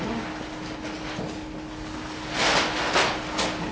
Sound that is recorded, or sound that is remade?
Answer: recorded